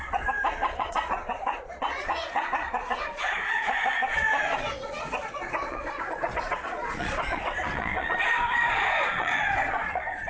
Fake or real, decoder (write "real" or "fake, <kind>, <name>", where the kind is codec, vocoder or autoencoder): fake, vocoder, Vocos